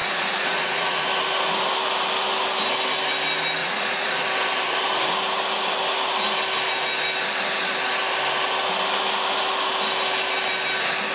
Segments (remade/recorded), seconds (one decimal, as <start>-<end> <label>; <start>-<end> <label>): 0.0-1.0 remade; 1.0-3.6 recorded; 3.6-4.3 remade; 4.3-11.1 recorded